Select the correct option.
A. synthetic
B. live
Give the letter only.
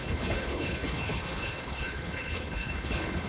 A